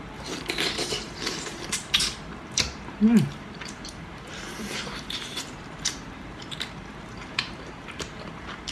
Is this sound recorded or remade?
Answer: remade